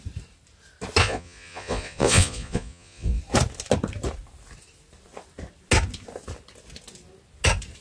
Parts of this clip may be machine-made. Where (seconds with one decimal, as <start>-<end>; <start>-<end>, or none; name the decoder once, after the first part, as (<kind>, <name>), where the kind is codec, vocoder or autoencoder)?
1.0-3.2 (vocoder, Vocos)